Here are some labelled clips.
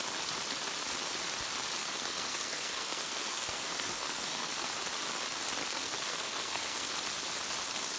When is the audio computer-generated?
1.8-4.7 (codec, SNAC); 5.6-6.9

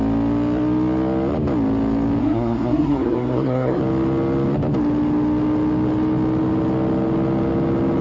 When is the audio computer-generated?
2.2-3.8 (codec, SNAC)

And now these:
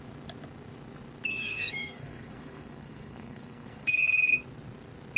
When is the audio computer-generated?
1.3-4.4 (codec, SNAC)

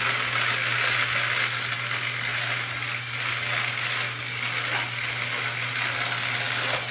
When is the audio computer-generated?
none

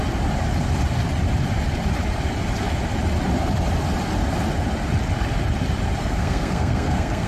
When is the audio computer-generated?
6.0-7.3 (codec, SNAC)